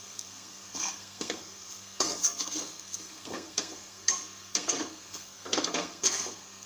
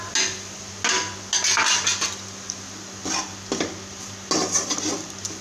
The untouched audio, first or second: second